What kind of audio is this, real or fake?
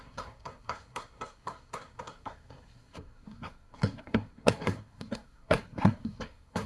fake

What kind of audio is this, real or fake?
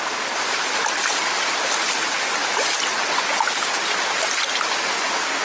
real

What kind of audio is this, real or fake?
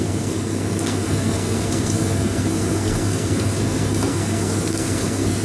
fake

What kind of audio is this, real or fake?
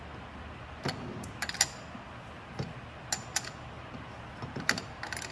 real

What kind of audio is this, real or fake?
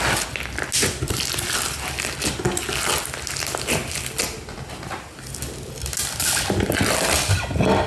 real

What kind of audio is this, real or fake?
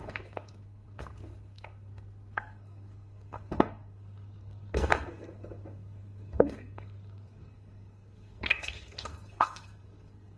fake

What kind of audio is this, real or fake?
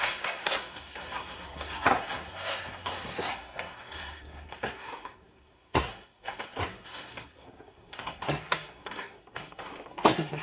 fake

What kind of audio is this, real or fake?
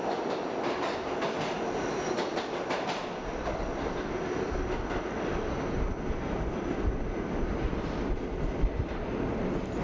real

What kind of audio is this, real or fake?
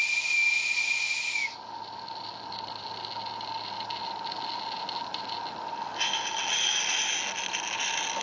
real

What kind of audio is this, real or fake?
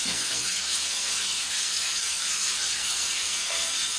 fake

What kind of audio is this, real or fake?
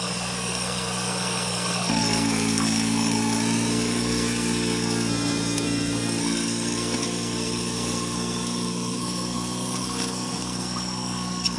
fake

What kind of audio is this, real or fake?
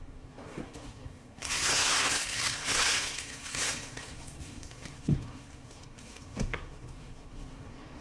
fake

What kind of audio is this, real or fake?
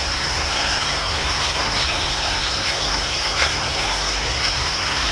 fake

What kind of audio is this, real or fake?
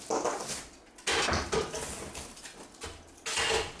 real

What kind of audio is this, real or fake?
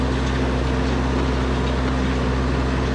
real